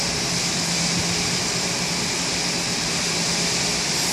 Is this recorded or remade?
recorded